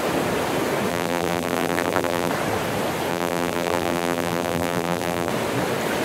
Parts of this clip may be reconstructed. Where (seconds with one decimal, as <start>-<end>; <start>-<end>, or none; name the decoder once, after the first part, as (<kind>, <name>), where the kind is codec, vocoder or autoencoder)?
0.9-2.3 (vocoder, BigVGAN v2); 3.1-5.3

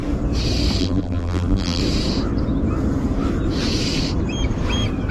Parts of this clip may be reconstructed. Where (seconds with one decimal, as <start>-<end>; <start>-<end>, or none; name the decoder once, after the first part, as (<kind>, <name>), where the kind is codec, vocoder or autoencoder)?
0.8-1.8 (vocoder, BigVGAN v2)

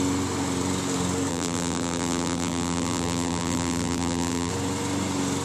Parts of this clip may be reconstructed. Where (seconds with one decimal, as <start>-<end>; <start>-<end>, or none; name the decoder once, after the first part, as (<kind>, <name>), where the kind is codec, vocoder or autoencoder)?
1.3-4.5 (vocoder, BigVGAN v2)

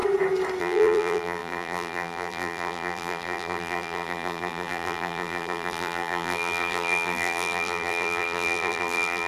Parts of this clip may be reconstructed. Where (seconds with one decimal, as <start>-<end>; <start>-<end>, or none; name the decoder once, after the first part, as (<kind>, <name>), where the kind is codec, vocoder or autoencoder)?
0.6-9.3 (vocoder, BigVGAN v2)